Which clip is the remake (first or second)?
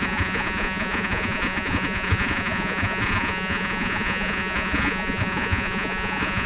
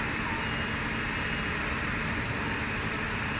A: first